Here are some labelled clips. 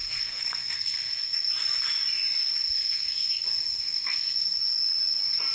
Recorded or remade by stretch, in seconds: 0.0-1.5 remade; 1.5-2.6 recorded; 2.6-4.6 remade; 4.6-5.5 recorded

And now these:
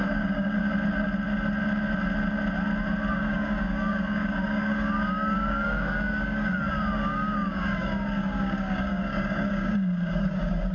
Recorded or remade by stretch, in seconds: 0.0-0.6 remade; 0.6-3.1 recorded; 3.1-10.7 remade